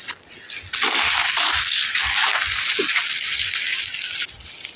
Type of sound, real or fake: real